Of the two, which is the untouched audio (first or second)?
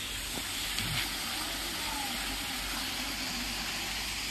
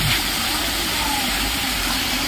first